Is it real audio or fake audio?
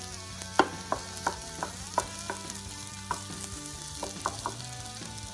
real